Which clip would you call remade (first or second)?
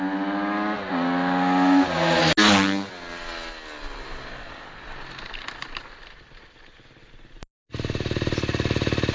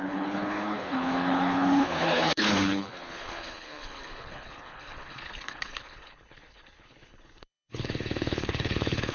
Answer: second